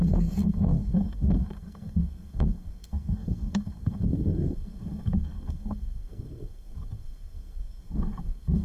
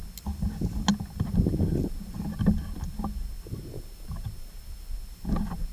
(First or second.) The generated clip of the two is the first